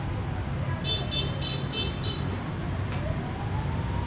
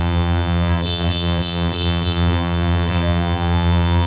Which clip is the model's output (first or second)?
second